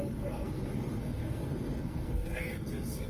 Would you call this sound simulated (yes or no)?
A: yes